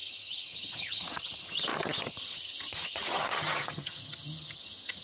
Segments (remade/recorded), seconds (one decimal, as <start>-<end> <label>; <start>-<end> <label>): 0.0-5.0 remade